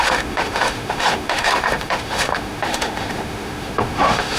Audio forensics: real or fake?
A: fake